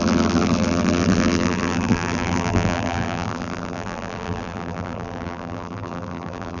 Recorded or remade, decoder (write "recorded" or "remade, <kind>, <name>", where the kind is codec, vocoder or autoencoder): remade, vocoder, BigVGAN v2